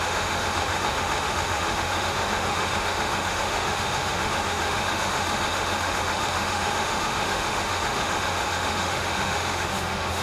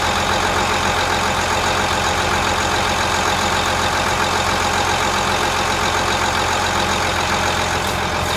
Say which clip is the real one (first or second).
second